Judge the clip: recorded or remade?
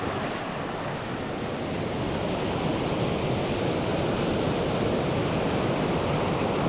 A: recorded